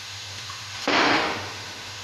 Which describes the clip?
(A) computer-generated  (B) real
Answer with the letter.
A